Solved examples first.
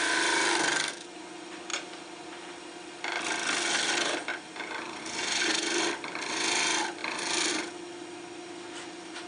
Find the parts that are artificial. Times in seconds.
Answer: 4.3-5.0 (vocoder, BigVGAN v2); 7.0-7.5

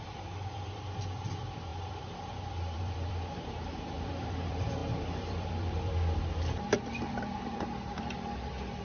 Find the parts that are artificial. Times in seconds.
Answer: 0.0-8.8 (vocoder, BigVGAN v2)

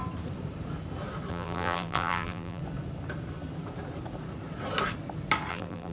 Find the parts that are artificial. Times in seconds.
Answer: 1.3-2.6 (vocoder, BigVGAN v2); 5.5-5.9

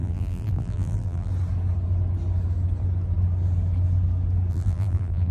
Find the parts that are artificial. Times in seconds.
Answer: 0.0-1.3 (vocoder, BigVGAN v2); 4.5-5.3

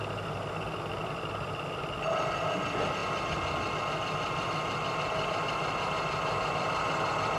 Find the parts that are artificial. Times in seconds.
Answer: 0.9-1.8 (vocoder, BigVGAN v2)

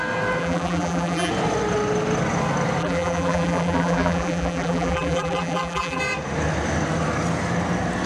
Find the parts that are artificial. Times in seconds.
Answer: 0.4-1.3 (vocoder, BigVGAN v2); 2.8-6.0

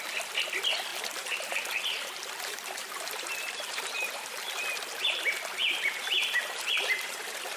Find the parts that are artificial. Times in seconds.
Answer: 0.9-4.4 (vocoder, BigVGAN v2); 5.6-7.6